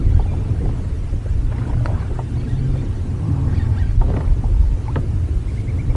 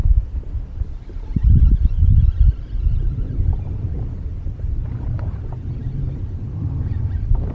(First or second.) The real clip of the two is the first